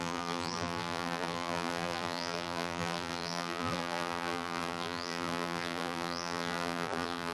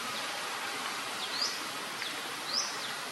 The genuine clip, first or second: second